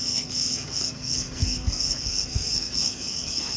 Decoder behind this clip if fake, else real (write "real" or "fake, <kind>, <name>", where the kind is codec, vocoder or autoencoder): fake, codec, SNAC